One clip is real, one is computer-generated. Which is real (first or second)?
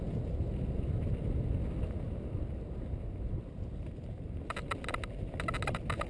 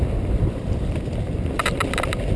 first